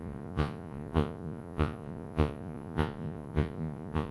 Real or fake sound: fake